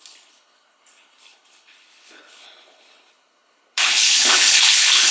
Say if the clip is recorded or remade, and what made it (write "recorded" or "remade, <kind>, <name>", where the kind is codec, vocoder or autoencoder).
remade, codec, HILCodec